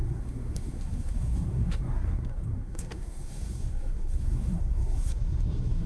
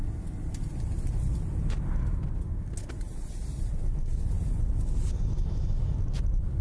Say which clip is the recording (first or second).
second